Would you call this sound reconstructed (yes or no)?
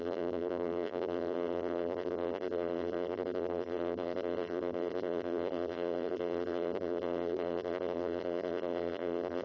yes